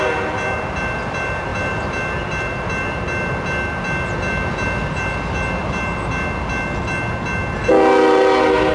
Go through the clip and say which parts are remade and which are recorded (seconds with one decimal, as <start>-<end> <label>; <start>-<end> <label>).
0.0-8.7 recorded